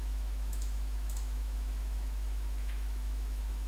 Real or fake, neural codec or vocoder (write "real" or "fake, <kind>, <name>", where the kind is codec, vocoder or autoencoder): fake, autoencoder, DAC-VAE